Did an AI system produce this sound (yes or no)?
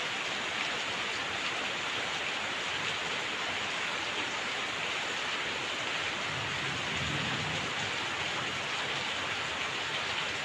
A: no